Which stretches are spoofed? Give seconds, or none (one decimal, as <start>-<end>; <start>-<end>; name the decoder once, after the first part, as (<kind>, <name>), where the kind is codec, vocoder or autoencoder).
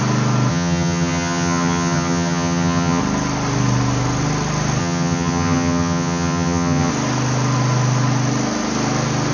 0.5-3.0 (vocoder, HiFi-GAN); 4.8-6.9